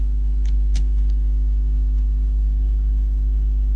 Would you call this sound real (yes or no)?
no